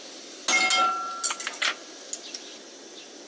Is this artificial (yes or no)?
no